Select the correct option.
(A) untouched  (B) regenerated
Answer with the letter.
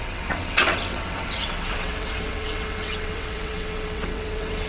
B